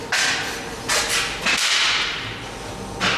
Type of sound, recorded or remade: recorded